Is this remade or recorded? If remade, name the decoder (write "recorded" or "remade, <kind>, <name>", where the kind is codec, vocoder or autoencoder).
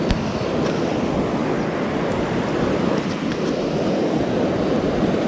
recorded